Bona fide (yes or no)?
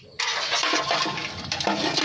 yes